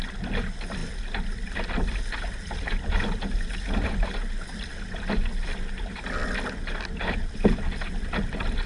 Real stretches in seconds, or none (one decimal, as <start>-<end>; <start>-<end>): 0.0-8.7